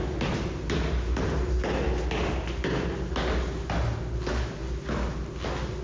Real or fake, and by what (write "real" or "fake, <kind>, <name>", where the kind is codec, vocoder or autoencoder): real